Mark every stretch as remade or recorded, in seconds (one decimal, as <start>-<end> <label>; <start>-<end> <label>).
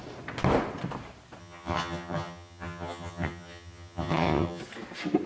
0.0-1.4 recorded; 1.4-4.6 remade; 4.6-5.3 recorded